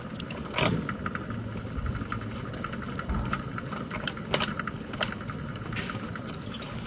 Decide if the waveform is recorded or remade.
recorded